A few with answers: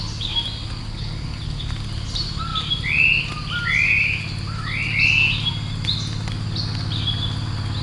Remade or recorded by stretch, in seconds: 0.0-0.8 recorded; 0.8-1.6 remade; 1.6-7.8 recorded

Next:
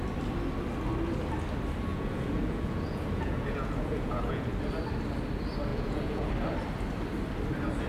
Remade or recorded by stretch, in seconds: 0.0-1.9 recorded; 1.9-4.5 remade; 4.5-5.7 recorded; 5.7-6.3 remade; 6.3-7.9 recorded

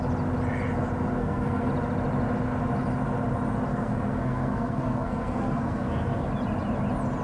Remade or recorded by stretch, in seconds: 0.0-1.2 recorded; 1.2-1.7 remade; 1.7-3.7 recorded; 3.7-6.3 remade; 6.3-7.2 recorded